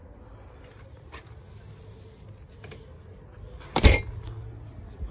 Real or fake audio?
real